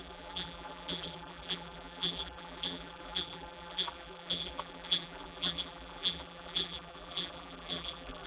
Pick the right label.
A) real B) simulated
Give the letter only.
B